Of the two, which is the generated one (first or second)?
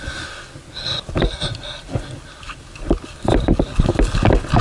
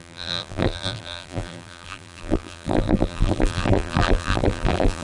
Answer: second